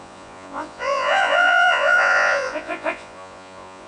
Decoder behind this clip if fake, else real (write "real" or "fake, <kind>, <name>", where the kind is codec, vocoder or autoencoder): fake, vocoder, Vocos